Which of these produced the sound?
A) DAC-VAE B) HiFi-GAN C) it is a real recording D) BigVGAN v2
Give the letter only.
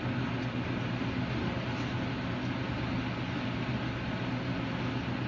C